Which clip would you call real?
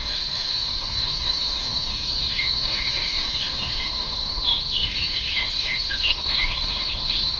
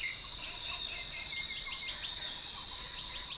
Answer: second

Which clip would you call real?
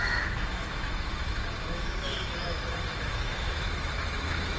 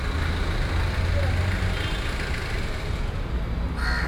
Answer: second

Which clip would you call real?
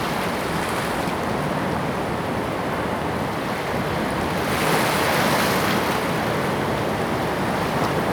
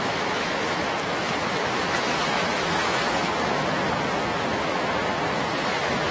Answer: first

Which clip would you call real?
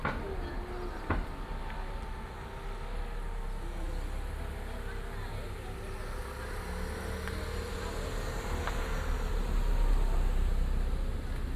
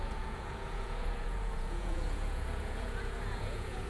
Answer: first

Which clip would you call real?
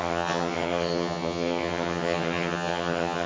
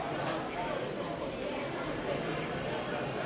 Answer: second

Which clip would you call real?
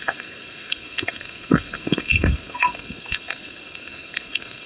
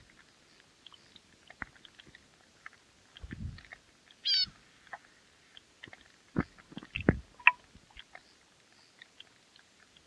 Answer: second